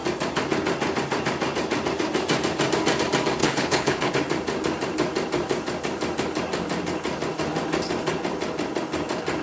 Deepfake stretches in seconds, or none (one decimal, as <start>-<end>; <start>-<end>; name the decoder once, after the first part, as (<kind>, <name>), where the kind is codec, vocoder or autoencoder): 3.4-4.1 (codec, HILCodec)